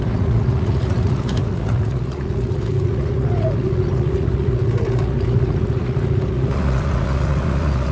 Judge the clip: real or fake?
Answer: fake